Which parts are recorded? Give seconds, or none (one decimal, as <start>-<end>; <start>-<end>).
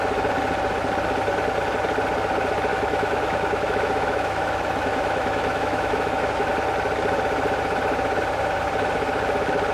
0.0-2.7; 6.5-9.7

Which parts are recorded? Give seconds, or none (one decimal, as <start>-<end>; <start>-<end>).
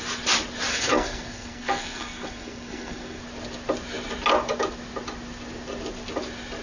0.0-0.7; 3.2-6.6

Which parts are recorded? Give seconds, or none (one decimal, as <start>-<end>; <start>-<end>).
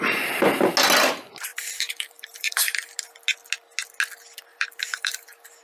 0.0-1.5; 2.9-4.5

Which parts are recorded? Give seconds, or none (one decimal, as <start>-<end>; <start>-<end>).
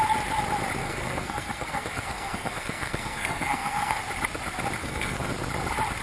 0.0-0.8; 4.0-4.8; 5.3-6.0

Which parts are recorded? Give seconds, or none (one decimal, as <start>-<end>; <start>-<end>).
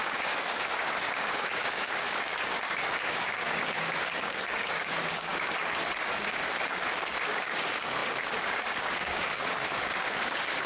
none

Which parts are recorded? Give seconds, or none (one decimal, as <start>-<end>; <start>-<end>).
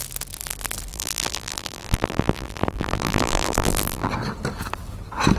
0.0-0.9; 4.1-5.4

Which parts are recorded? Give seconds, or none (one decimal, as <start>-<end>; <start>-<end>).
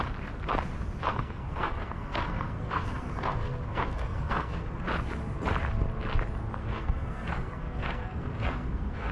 0.0-1.1; 4.7-6.6